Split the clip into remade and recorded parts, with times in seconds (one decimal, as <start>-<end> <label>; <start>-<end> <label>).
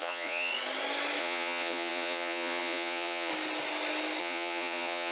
0.0-0.5 remade; 0.5-1.2 recorded; 1.2-3.3 remade; 3.3-4.2 recorded; 4.2-5.1 remade